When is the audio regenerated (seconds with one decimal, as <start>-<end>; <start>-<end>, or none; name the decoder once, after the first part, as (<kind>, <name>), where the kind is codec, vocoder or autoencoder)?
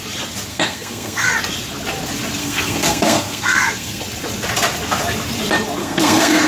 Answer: 0.5-1.3 (codec, SNAC); 2.4-4.0; 5.8-6.5